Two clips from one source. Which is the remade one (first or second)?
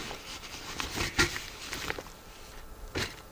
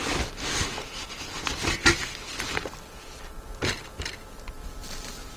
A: first